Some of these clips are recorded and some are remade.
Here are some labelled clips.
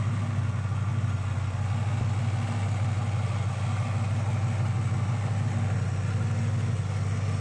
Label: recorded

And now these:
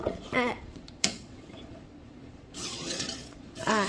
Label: remade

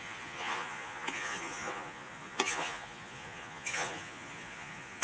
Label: remade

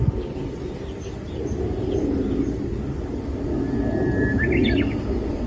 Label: recorded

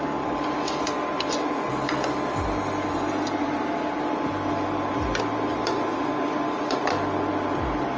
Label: recorded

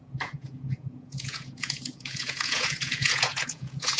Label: remade